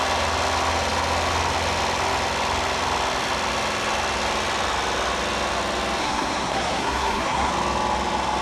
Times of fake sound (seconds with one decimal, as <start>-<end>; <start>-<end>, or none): 6.0-7.5